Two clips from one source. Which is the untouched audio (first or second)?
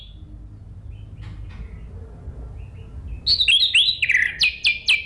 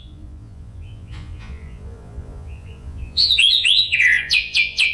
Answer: first